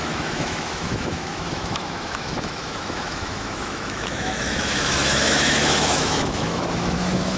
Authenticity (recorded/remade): remade